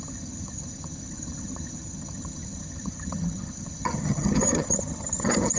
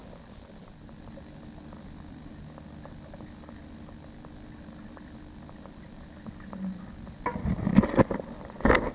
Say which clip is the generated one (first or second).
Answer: first